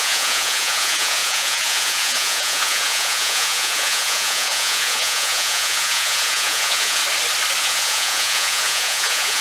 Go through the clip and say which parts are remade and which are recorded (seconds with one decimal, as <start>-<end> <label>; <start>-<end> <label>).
0.0-7.0 remade; 7.0-7.6 recorded; 7.6-9.4 remade